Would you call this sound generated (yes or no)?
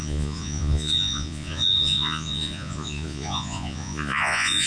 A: yes